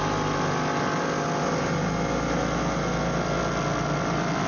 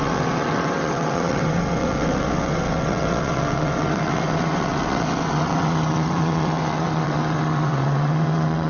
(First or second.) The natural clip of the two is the first